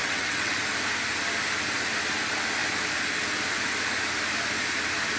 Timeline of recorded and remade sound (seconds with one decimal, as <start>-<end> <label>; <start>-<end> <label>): 0.0-0.6 remade; 0.6-5.2 recorded